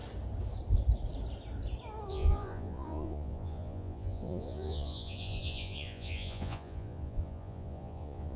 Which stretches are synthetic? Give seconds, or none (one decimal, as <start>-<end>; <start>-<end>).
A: 2.1-8.4